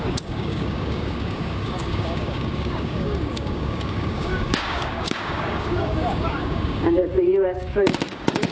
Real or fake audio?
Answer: fake